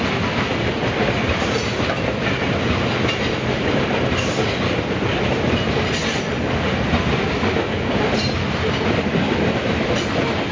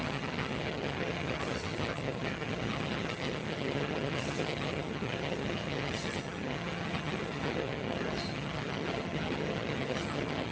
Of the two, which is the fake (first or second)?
second